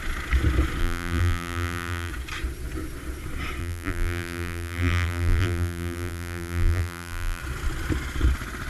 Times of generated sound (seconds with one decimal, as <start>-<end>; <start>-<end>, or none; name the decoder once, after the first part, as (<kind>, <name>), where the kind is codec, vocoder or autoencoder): 0.8-2.1 (vocoder, BigVGAN v2); 3.6-7.4